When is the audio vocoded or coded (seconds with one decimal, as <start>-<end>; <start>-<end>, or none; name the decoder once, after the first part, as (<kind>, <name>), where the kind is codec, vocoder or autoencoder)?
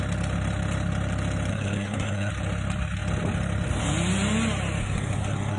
1.5-2.3 (codec, SNAC); 4.8-5.6